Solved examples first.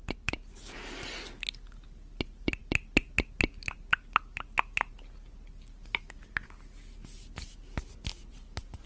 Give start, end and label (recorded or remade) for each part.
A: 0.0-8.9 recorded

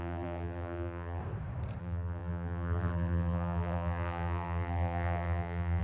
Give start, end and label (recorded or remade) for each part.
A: 0.0-1.2 remade; 1.2-1.8 recorded; 1.8-5.8 remade

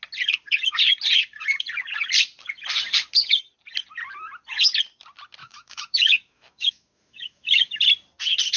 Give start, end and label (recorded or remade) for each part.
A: 0.0-5.4 recorded; 5.4-7.8 remade; 7.8-8.6 recorded

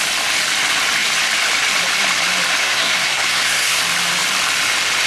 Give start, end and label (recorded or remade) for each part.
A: 0.0-2.6 recorded; 2.6-3.8 remade; 3.8-5.1 recorded

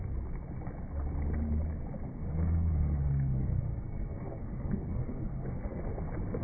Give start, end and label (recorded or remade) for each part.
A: 0.0-2.1 recorded; 2.1-5.9 remade; 5.9-6.4 recorded

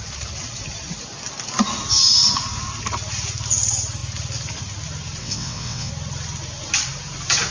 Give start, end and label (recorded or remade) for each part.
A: 0.0-5.2 recorded; 5.2-5.9 remade; 5.9-7.5 recorded

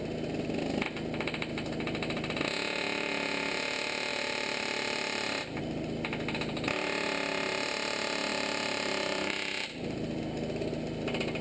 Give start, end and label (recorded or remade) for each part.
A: 0.0-4.1 recorded; 4.1-5.6 remade; 5.6-8.3 recorded; 8.3-10.2 remade; 10.2-11.4 recorded